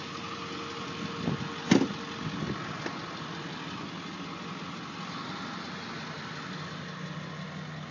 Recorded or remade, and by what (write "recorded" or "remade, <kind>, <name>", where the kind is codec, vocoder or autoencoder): recorded